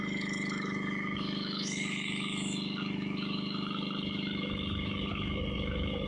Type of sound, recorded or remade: remade